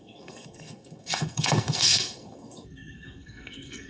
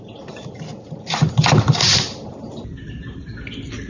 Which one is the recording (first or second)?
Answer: second